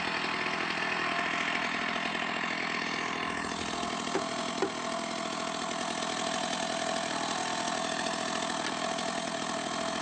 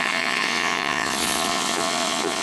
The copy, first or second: second